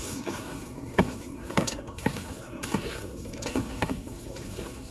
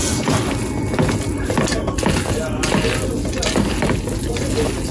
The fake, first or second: first